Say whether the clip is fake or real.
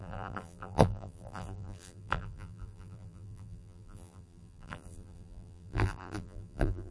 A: fake